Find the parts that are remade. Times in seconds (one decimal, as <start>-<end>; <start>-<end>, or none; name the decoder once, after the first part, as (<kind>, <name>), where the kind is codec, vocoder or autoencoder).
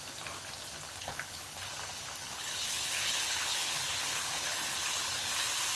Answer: 1.0-1.7 (codec, HILCodec); 2.2-5.3